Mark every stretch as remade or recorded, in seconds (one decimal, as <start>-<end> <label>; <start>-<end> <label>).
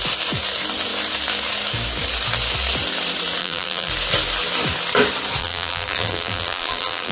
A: 0.0-3.4 recorded; 3.4-3.9 remade; 3.9-5.4 recorded; 5.4-7.1 remade